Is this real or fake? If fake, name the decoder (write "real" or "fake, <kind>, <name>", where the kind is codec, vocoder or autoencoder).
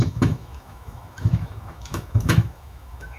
fake, autoencoder, DAC-VAE